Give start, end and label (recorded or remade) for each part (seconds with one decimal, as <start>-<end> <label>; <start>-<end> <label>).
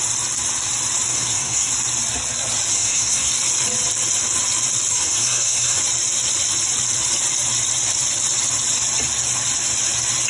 0.0-1.1 recorded; 1.1-1.7 remade; 1.7-2.7 recorded; 2.7-3.3 remade; 3.3-4.9 recorded; 4.9-5.8 remade; 5.8-10.3 recorded